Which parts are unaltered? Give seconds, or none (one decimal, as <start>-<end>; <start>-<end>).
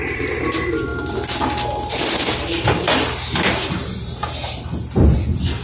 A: 0.9-3.7; 4.2-5.0